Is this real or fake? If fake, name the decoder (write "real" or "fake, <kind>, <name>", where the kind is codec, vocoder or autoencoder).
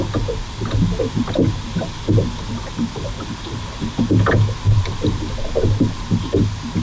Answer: real